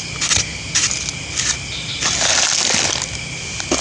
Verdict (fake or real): real